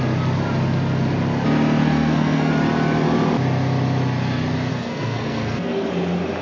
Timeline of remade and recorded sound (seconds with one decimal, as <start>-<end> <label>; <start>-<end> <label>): 0.0-1.8 recorded; 1.8-2.5 remade; 2.5-4.7 recorded; 4.7-5.9 remade; 5.9-6.4 recorded